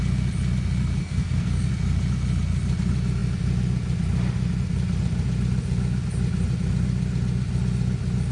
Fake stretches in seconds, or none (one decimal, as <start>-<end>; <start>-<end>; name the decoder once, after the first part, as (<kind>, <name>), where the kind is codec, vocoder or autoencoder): 1.0-1.7 (codec, SNAC)